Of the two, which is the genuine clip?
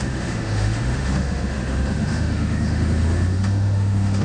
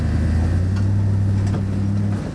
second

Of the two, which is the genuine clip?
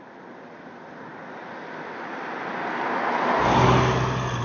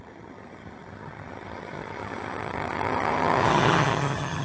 first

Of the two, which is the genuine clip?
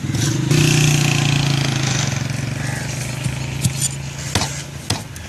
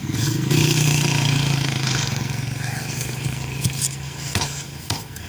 first